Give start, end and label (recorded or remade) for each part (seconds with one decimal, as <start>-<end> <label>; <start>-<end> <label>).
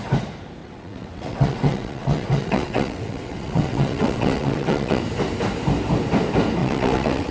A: 0.0-0.6 recorded; 0.6-5.0 remade; 5.0-6.6 recorded; 6.6-7.3 remade